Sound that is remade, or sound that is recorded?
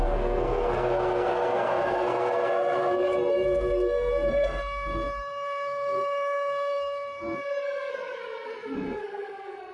remade